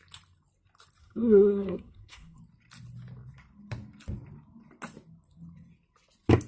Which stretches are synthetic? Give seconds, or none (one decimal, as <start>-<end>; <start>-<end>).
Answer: 1.0-2.4

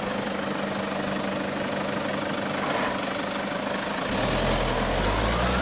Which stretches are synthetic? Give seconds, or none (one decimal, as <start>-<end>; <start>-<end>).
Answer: none

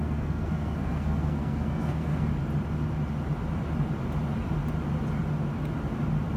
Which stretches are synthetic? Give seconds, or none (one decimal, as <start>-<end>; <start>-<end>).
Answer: 0.0-2.3